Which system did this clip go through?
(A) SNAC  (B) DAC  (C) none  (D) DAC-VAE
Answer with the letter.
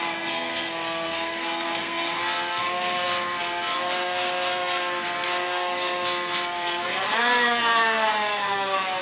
A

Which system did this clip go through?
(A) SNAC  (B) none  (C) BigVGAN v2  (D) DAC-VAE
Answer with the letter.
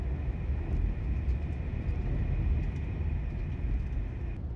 B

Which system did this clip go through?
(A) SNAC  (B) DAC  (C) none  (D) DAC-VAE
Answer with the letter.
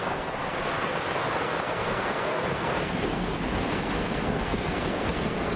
A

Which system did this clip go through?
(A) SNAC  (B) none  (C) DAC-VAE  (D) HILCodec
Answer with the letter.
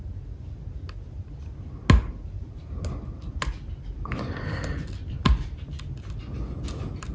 B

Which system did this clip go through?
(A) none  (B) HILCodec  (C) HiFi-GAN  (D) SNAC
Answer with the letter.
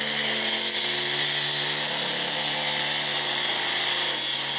A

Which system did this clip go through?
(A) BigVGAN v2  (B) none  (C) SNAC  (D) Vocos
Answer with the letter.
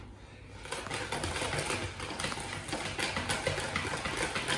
B